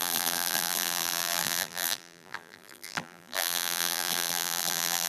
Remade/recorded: remade